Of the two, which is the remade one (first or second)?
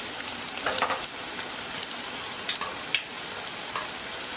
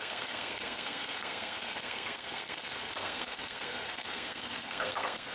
second